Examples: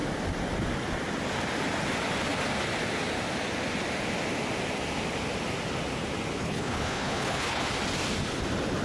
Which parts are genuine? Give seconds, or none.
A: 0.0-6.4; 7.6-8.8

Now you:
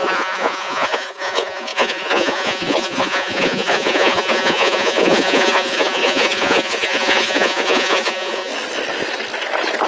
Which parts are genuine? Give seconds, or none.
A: 8.5-9.9

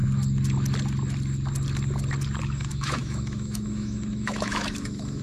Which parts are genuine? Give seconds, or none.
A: 0.0-2.4

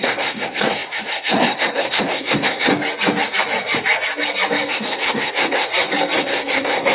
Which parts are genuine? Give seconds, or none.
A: 2.7-4.7; 5.7-6.2

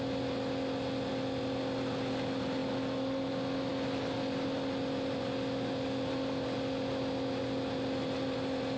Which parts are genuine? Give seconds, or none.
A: 0.0-8.8